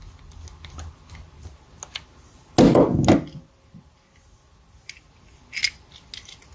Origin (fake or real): real